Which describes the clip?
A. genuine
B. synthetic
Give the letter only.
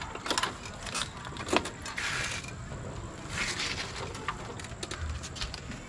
A